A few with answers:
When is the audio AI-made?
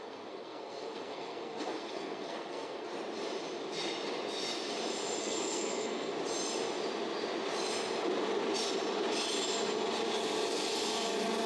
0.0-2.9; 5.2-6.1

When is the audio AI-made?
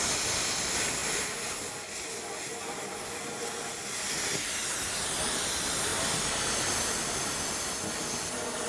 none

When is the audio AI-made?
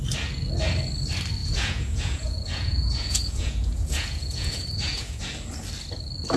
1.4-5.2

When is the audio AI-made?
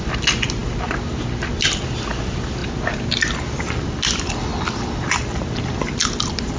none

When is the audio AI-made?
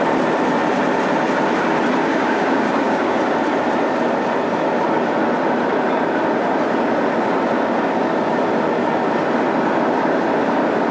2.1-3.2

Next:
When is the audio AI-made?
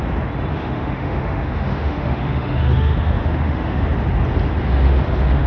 0.5-3.8; 4.9-5.5